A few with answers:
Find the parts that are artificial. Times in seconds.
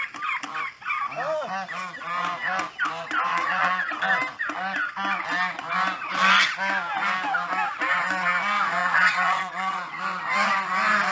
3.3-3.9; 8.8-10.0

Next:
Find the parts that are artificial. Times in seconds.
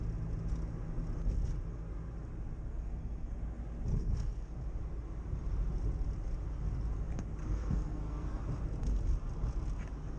2.7-3.4; 3.9-4.5; 7.4-8.4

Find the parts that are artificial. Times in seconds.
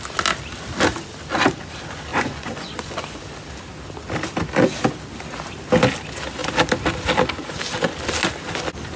2.1-3.2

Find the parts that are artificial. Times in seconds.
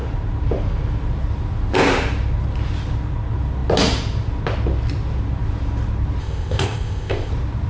6.2-7.3